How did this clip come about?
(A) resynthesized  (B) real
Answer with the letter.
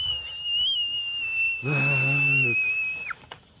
B